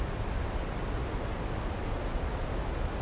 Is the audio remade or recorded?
recorded